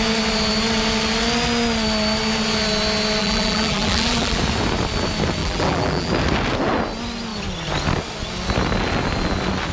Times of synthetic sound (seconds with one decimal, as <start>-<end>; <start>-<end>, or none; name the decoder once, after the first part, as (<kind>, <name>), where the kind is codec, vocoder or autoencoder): 3.2-4.4 (vocoder, BigVGAN v2); 5.4-6.1